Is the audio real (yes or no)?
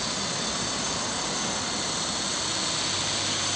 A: yes